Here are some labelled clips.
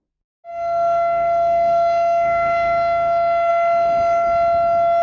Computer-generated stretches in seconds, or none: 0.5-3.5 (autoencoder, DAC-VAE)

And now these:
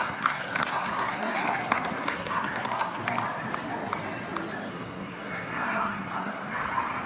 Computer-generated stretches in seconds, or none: 0.0-3.0 (codec, SNAC); 4.7-6.4

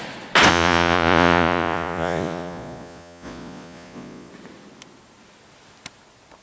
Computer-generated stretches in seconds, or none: 0.5-4.3 (vocoder, Vocos)

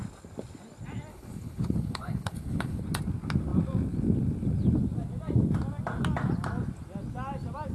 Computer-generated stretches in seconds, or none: 1.1-2.8 (codec, HILCodec)

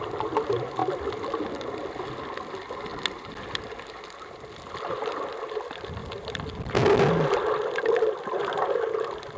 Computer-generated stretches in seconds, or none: none

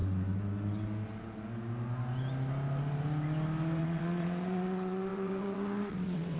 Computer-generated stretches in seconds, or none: 3.8-6.4 (vocoder, WaveNeXt)

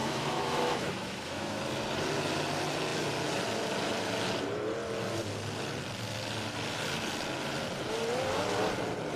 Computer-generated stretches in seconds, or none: 0.0-1.6 (autoencoder, DAC-VAE)